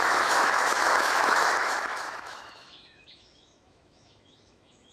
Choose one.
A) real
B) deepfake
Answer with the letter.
B